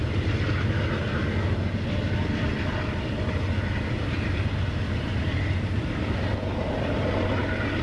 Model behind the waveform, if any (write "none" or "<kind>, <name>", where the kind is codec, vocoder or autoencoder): none